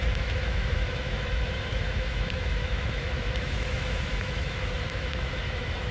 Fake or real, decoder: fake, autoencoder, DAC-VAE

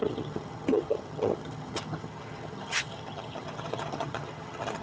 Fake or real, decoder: fake, vocoder, HiFi-GAN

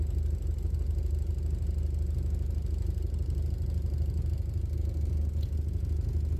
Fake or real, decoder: real